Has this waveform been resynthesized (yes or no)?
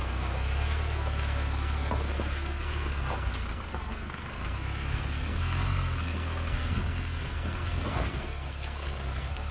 yes